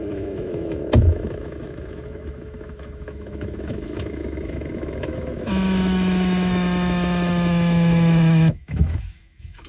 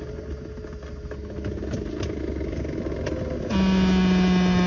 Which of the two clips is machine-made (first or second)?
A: first